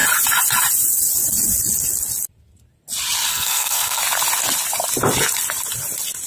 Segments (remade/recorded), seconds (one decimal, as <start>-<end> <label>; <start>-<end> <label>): 0.0-3.3 recorded; 3.3-4.0 remade; 4.0-6.3 recorded